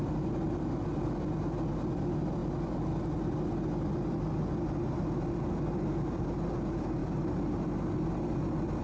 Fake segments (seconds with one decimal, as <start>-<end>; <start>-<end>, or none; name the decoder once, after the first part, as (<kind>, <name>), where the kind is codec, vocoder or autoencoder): none